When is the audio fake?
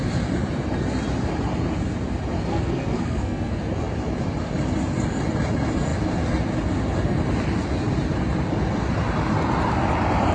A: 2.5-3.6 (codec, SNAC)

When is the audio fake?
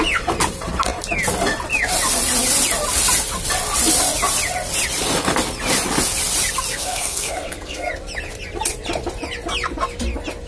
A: 6.7-7.9 (codec, SNAC)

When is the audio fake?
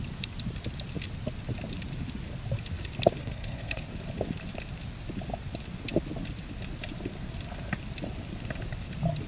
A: 3.2-3.8 (codec, SNAC)